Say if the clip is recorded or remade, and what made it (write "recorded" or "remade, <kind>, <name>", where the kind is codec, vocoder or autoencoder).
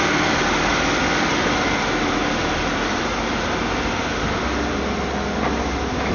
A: recorded